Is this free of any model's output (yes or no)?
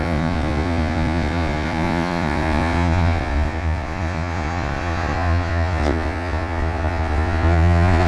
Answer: no